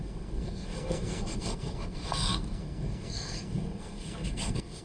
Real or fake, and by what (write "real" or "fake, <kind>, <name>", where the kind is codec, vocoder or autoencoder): fake, codec, SNAC